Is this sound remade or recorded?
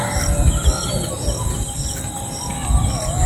recorded